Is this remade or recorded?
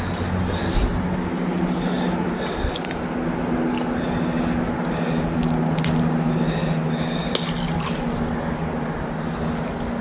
recorded